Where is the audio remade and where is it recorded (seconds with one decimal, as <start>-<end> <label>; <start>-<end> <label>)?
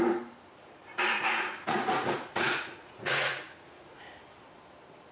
0.0-0.9 recorded; 0.9-4.0 remade; 4.0-5.1 recorded